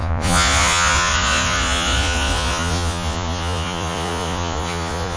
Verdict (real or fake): fake